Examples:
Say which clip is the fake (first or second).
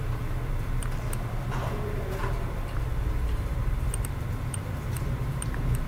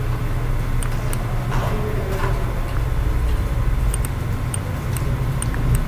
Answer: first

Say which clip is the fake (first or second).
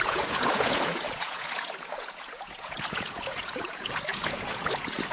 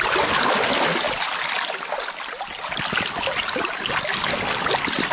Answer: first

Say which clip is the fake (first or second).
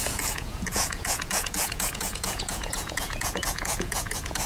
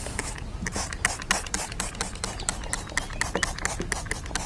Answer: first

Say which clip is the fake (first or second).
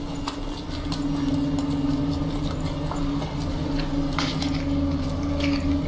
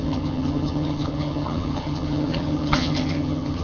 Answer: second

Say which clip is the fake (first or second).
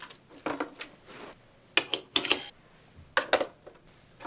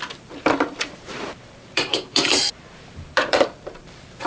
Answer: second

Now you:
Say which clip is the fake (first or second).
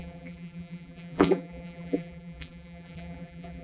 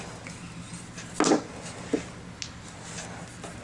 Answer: first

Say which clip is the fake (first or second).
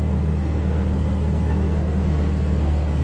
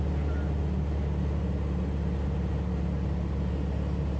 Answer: first